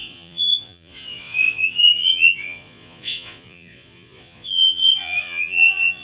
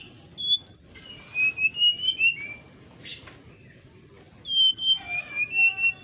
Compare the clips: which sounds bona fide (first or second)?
second